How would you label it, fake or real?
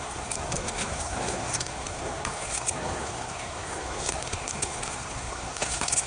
fake